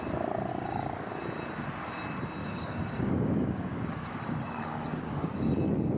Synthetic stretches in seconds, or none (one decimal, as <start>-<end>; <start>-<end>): 0.5-1.1; 2.4-5.5